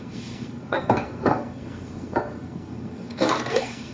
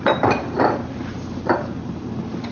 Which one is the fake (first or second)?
first